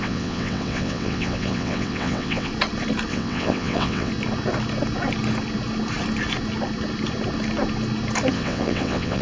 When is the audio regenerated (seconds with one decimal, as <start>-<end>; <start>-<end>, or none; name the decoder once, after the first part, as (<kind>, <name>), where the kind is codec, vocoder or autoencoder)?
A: 0.0-2.5 (vocoder, WaveNeXt); 3.1-4.1; 8.3-9.2